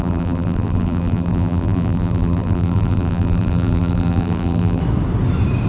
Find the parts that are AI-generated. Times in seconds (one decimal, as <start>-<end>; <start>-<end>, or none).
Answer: 0.0-4.8